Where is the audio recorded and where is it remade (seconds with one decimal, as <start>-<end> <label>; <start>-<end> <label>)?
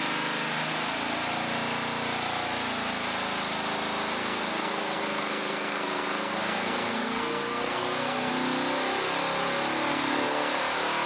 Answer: 0.0-4.2 recorded; 4.2-8.3 remade; 8.3-9.9 recorded; 9.9-10.6 remade; 10.6-11.1 recorded